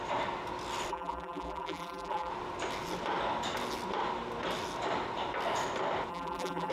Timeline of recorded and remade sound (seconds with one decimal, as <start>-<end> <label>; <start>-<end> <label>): 0.0-0.9 recorded; 0.9-2.3 remade; 2.3-6.1 recorded; 6.1-6.7 remade